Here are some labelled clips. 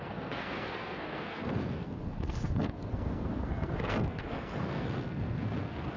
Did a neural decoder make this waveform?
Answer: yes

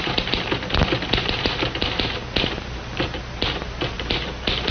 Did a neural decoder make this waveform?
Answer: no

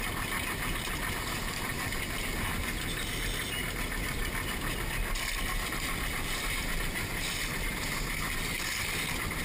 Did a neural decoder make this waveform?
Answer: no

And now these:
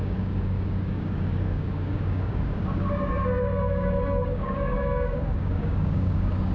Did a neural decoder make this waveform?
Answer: yes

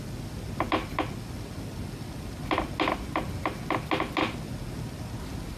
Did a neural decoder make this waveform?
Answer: no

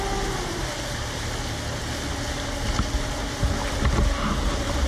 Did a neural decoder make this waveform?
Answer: no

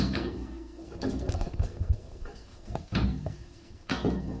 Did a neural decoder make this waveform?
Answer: yes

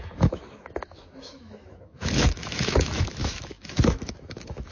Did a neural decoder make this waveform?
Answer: yes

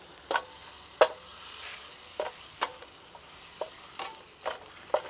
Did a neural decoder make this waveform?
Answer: no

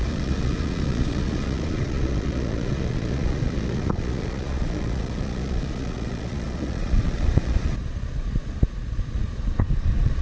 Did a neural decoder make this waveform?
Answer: yes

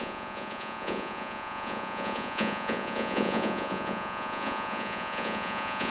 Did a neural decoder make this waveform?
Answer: yes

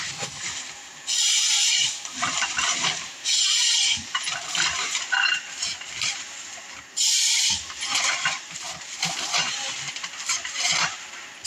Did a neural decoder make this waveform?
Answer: yes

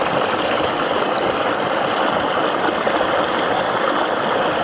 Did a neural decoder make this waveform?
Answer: no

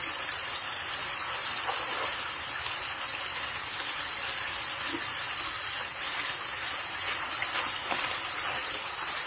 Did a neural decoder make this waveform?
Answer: no